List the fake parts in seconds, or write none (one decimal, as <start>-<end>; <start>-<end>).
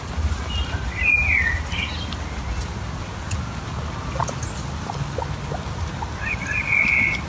none